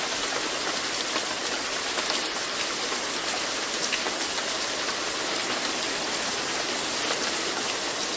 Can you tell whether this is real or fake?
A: real